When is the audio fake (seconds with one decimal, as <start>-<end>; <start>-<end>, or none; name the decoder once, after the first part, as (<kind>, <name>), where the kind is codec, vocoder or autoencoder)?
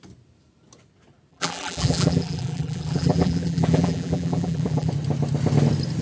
1.3-4.9 (vocoder, BigVGAN v2)